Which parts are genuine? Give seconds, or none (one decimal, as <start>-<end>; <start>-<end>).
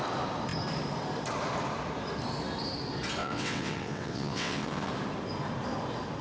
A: 0.0-3.2; 4.9-6.2